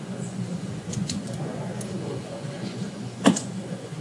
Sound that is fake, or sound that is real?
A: fake